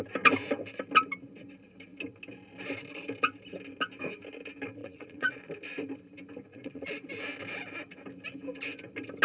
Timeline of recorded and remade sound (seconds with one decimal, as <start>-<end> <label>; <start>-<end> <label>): 0.0-4.8 recorded; 4.8-5.5 remade; 5.5-6.5 recorded; 6.5-7.1 remade; 7.1-9.2 recorded